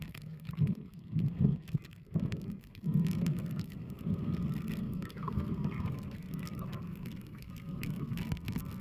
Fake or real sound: fake